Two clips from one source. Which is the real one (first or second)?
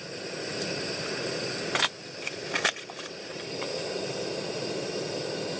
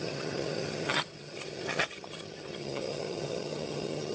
first